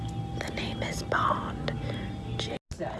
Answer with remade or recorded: recorded